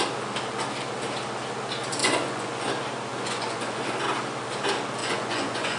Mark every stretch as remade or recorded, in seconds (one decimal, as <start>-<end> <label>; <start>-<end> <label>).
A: 0.0-2.0 recorded; 2.0-2.7 remade; 2.7-3.1 recorded; 3.1-3.8 remade; 3.8-5.0 recorded; 5.0-5.8 remade